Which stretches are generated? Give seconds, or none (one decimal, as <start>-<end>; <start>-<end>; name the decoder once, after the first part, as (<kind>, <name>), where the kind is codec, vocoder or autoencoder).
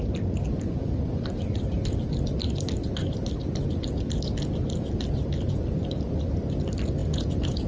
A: 7.0-7.7 (vocoder, Vocos)